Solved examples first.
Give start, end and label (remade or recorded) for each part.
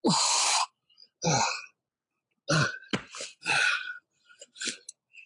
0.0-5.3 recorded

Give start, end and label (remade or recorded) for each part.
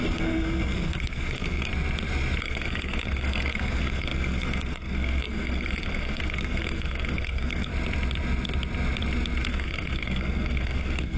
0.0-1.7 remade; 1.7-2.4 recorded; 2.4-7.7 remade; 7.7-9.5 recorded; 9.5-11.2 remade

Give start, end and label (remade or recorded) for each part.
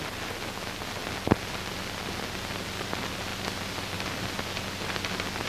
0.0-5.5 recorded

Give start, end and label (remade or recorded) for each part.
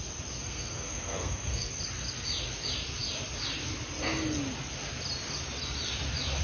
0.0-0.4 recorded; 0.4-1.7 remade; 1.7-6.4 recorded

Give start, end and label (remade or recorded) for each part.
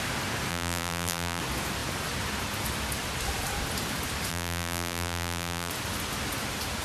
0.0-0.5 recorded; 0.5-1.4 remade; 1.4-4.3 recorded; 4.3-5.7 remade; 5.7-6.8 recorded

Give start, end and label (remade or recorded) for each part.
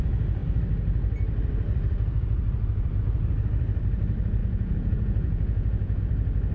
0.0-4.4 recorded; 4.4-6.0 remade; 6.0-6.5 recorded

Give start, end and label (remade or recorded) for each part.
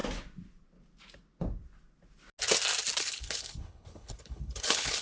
0.0-3.0 recorded; 3.0-5.0 remade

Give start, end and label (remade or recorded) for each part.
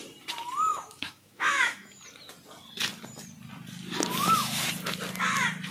0.0-0.7 recorded; 0.7-2.0 remade; 2.0-5.7 recorded